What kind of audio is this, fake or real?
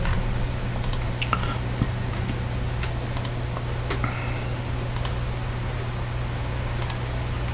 real